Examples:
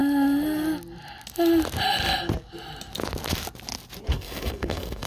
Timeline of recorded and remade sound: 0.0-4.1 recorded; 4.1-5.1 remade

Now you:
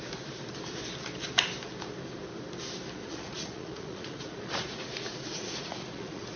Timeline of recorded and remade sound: 0.0-3.0 recorded; 3.0-6.4 remade

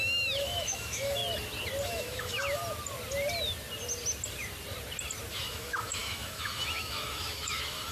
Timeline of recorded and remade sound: 0.0-1.2 remade; 1.2-1.8 recorded; 1.8-2.6 remade; 2.6-5.3 recorded; 5.3-7.9 remade

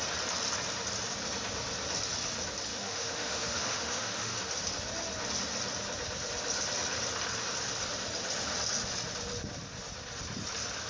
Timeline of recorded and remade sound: 0.0-2.7 recorded; 2.7-4.4 remade; 4.4-10.9 recorded

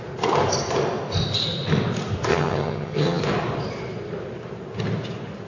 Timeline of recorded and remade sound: 0.0-2.3 recorded; 2.3-3.2 remade; 3.2-5.5 recorded

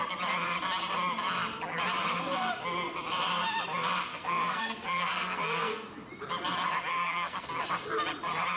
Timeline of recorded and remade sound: 0.0-4.1 recorded; 4.1-5.9 remade; 5.9-6.9 recorded; 6.9-7.5 remade; 7.5-8.6 recorded

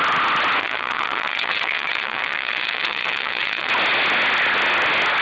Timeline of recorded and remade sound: 0.0-0.6 recorded; 0.6-3.7 remade; 3.7-5.2 recorded